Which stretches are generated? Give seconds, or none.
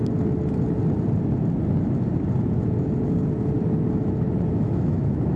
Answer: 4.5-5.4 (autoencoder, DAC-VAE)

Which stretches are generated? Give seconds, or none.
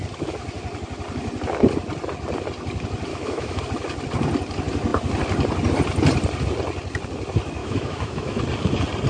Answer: 3.1-3.6 (autoencoder, DAC-VAE); 7.6-8.4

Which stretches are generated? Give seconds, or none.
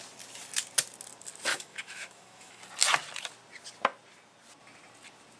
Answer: 1.5-2.6 (autoencoder, DAC-VAE)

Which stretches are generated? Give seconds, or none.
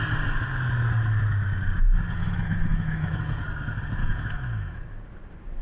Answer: 2.2-3.4 (autoencoder, DAC-VAE); 4.0-4.8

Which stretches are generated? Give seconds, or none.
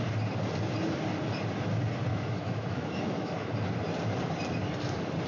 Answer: 2.1-3.5 (autoencoder, DAC-VAE)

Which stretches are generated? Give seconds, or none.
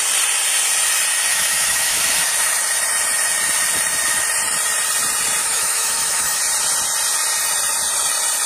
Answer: 1.3-2.0 (autoencoder, DAC-VAE); 5.4-6.4